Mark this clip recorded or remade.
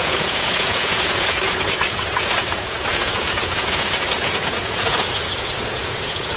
remade